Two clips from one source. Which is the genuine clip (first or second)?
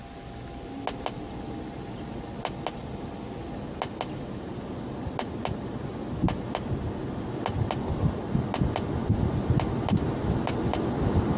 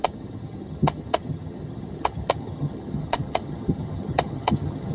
first